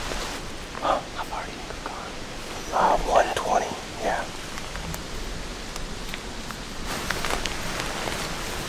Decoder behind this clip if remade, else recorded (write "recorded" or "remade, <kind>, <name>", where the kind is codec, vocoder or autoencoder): recorded